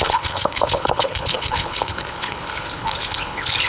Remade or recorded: remade